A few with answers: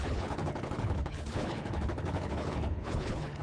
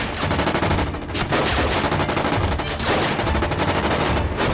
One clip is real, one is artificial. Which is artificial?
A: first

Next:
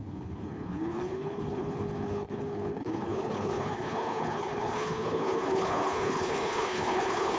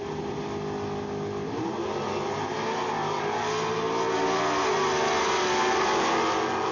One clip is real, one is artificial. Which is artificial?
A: first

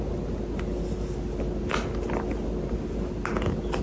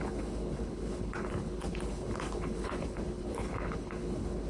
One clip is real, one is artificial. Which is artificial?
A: second